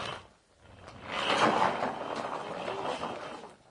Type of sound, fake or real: real